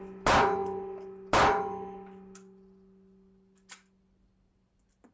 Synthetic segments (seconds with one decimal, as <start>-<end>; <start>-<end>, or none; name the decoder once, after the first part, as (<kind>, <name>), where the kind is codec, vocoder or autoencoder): none